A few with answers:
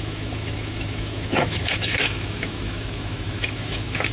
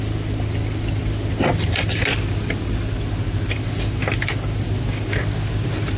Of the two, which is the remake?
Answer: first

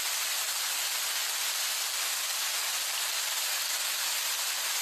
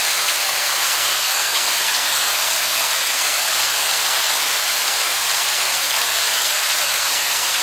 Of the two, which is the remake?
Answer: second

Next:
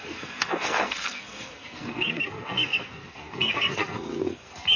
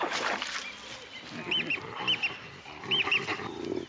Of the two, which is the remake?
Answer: first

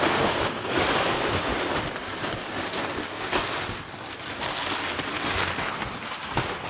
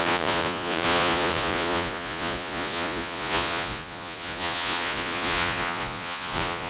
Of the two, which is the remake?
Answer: second